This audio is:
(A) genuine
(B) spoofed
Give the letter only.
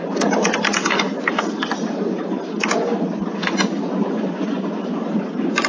A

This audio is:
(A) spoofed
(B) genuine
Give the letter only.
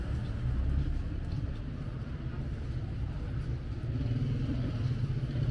B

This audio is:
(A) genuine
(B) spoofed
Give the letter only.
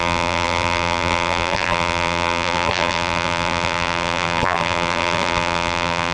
B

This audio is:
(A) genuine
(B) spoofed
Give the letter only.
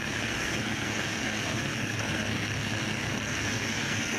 B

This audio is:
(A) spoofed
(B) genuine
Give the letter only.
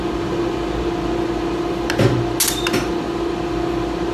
B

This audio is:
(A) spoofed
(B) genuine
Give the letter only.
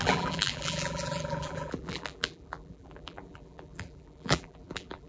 A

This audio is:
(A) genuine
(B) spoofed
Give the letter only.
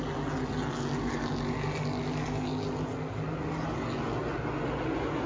A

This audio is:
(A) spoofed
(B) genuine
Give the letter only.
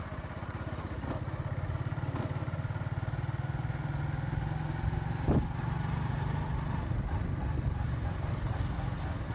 B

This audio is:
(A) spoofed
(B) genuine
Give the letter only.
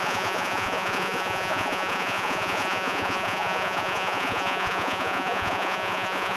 A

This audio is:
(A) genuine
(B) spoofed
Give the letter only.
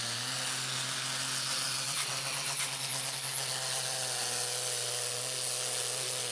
A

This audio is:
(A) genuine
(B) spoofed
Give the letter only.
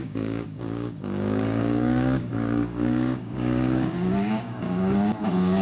B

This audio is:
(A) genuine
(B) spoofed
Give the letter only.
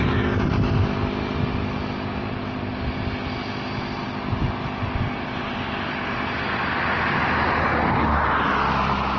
A